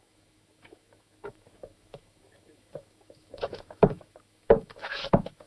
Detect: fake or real fake